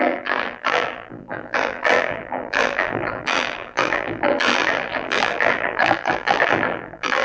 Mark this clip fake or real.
fake